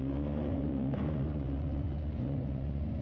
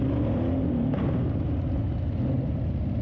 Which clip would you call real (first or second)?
second